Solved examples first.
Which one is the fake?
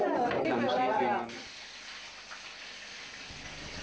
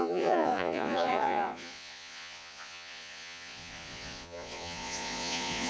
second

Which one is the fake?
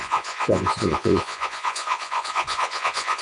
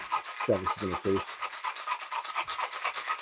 first